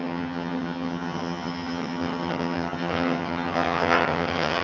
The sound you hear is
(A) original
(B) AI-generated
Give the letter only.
B